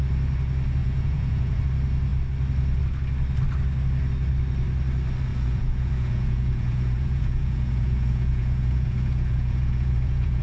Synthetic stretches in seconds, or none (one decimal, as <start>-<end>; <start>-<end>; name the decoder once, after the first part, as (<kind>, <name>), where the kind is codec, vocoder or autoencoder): 0.8-1.6 (vocoder, Vocos); 5.3-10.4